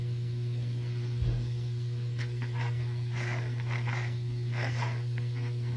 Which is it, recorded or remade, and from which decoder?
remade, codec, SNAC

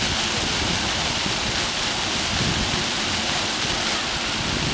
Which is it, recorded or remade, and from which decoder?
recorded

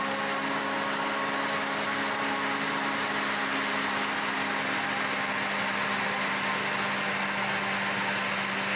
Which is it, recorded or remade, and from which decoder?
recorded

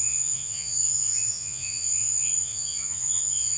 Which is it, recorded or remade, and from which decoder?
remade, vocoder, Vocos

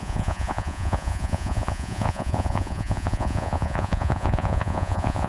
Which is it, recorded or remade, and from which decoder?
remade, vocoder, Vocos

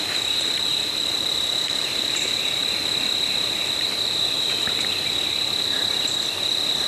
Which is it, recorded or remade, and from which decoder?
remade, vocoder, BigVGAN v2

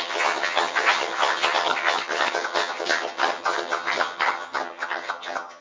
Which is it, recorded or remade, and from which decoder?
remade, vocoder, HiFi-GAN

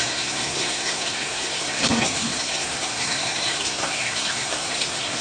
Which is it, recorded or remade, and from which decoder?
remade, codec, SNAC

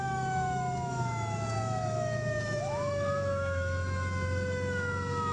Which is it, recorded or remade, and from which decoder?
remade, autoencoder, DAC-VAE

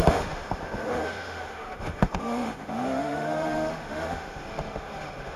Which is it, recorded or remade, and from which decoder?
remade, autoencoder, DAC-VAE